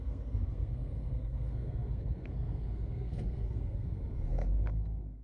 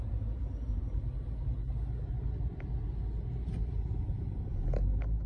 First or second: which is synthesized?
first